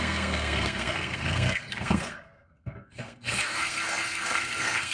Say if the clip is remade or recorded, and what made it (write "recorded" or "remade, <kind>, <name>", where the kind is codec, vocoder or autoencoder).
remade, codec, SNAC